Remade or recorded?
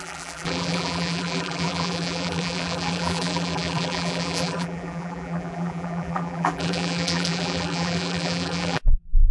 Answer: remade